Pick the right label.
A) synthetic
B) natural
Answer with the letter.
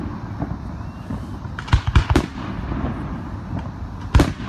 B